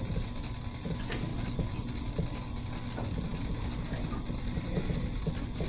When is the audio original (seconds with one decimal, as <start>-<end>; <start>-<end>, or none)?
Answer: 0.0-5.7